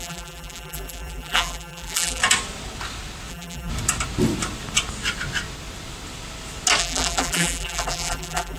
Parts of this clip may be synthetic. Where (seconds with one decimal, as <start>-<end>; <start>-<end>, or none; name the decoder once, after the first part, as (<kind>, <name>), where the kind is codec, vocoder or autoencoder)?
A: 0.0-2.2 (vocoder, BigVGAN v2); 3.3-3.7; 6.8-8.6